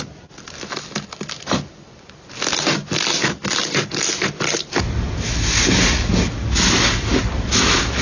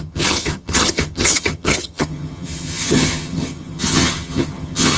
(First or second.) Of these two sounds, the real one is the first